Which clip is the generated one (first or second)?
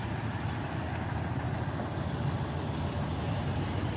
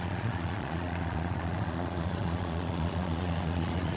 second